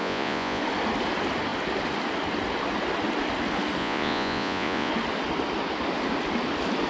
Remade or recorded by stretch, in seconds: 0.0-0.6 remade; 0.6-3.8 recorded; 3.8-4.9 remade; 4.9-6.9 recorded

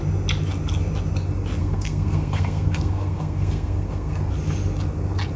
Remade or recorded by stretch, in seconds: 0.0-1.6 recorded; 1.6-4.3 remade; 4.3-5.4 recorded